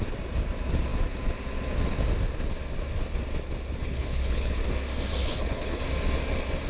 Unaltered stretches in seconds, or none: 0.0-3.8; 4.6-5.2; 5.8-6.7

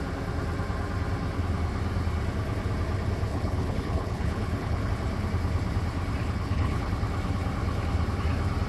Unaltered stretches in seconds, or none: 0.0-3.3; 4.9-6.2; 6.9-8.7